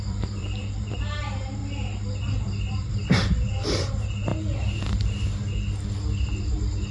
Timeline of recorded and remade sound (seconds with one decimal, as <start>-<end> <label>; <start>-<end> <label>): 0.0-1.6 remade; 1.6-2.3 recorded; 2.3-4.3 remade; 4.3-6.9 recorded